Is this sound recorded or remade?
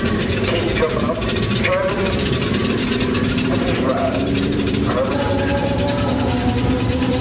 remade